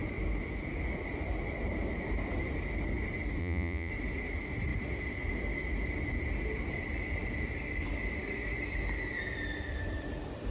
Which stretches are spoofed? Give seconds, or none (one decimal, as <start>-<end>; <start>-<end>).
3.4-3.9